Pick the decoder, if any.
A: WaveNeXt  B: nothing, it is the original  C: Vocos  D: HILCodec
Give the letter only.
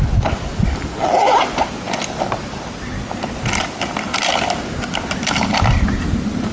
B